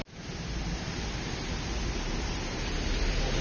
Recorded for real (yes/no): yes